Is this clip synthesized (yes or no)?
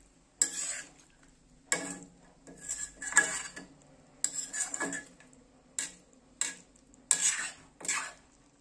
no